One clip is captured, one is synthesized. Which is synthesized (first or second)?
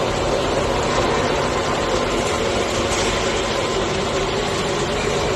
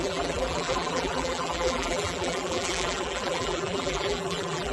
second